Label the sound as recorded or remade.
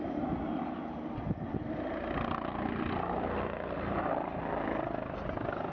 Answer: recorded